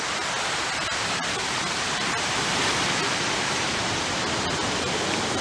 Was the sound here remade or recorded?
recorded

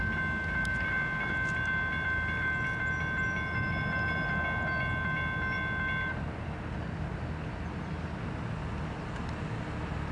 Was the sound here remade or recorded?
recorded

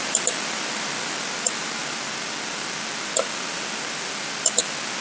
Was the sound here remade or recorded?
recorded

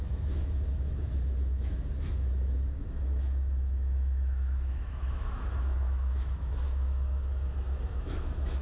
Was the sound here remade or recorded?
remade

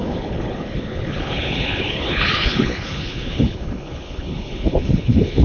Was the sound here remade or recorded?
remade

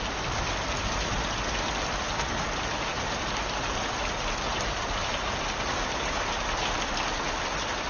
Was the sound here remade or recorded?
recorded